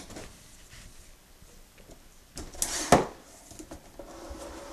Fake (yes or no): no